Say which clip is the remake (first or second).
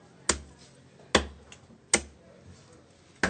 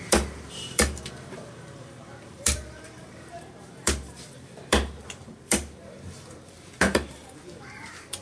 second